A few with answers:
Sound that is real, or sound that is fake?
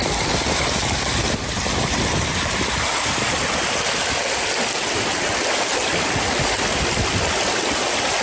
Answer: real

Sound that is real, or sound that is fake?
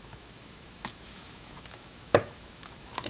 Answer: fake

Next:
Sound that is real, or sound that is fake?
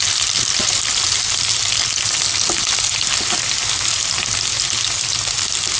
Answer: real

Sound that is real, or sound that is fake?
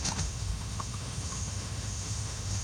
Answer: fake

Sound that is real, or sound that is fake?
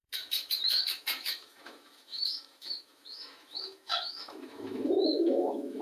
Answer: fake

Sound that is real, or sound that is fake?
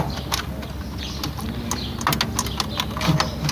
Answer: real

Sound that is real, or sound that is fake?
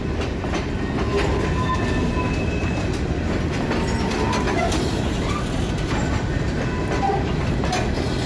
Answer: real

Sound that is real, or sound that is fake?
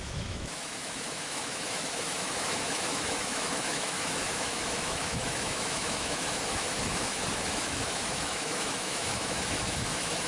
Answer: fake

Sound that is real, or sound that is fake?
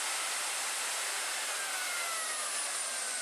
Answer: real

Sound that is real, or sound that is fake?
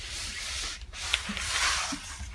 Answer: real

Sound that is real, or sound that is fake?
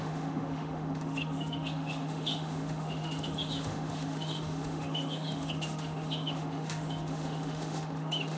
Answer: fake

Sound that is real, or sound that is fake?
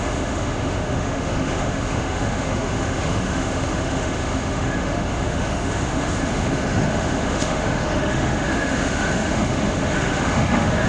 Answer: fake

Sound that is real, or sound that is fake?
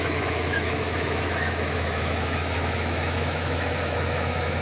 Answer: fake